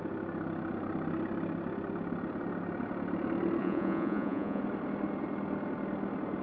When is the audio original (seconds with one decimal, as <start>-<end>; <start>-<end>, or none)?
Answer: 0.0-3.6; 4.6-6.4